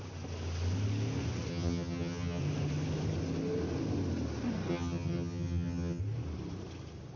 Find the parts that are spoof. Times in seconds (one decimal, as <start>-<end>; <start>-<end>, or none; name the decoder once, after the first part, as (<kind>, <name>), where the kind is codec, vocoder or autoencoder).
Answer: 1.5-2.4 (vocoder, HiFi-GAN); 4.7-6.0